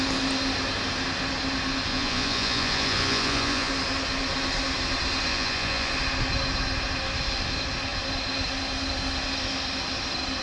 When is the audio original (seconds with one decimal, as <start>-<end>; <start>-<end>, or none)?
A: 0.0-1.9; 3.7-5.3; 5.9-10.4